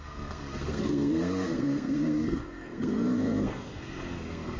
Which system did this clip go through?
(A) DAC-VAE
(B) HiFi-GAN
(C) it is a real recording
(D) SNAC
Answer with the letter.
D